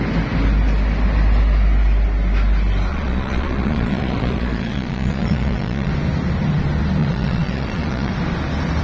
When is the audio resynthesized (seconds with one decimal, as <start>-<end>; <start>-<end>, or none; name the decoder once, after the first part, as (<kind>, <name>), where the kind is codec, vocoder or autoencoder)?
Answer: 2.9-5.9 (vocoder, Vocos); 7.0-8.1